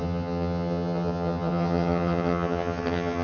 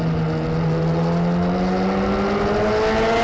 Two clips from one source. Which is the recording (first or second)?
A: second